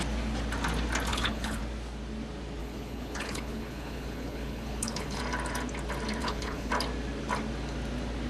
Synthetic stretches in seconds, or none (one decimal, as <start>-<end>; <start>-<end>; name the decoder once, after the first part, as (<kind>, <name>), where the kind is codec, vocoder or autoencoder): 1.1-1.6 (codec, HILCodec); 2.6-5.2; 6.2-6.7